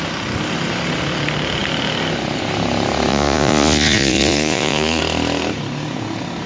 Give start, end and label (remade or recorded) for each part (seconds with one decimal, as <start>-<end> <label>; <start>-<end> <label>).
0.0-3.1 recorded; 3.1-5.0 remade; 5.0-6.5 recorded